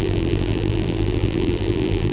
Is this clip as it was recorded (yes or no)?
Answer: no